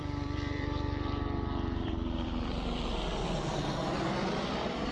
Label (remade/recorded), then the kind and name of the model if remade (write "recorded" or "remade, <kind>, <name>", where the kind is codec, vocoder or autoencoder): remade, vocoder, BigVGAN v2